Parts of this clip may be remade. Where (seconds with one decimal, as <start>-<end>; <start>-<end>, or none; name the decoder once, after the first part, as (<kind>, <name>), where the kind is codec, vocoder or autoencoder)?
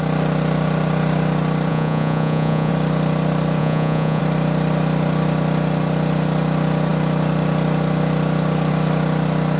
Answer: 1.7-2.7 (vocoder, Vocos); 3.6-4.2